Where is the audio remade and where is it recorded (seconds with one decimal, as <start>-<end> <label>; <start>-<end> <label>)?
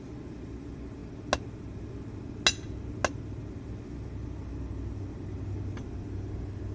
0.0-6.7 recorded